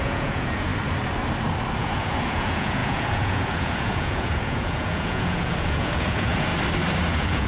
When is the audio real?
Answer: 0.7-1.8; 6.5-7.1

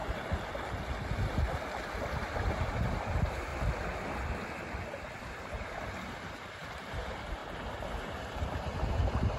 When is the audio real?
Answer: 0.0-2.7; 3.5-5.2

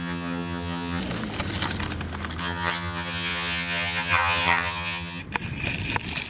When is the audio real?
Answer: 1.0-2.4; 5.2-6.3

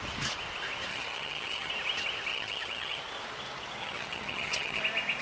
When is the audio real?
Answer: 0.0-0.9; 1.7-2.3; 3.0-3.8; 4.8-5.2

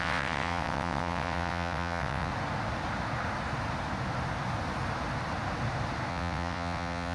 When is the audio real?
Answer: 2.3-6.1

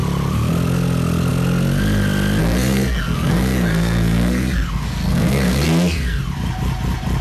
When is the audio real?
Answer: 0.0-2.4; 6.2-7.2

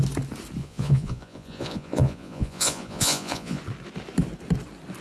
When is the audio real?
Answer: 0.0-0.6; 3.6-5.0